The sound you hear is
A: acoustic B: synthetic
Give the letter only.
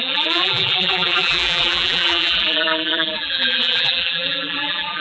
B